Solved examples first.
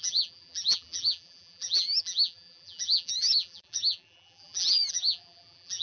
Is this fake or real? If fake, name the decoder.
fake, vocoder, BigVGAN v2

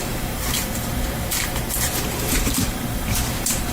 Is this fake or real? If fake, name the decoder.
fake, vocoder, BigVGAN v2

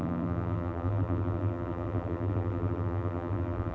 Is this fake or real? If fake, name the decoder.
fake, vocoder, BigVGAN v2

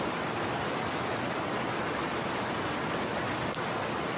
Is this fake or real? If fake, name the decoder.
fake, vocoder, BigVGAN v2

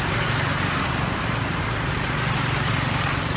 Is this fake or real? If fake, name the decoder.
fake, vocoder, BigVGAN v2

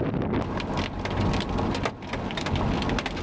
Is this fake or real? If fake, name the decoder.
real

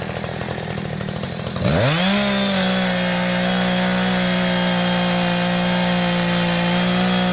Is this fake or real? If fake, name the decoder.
real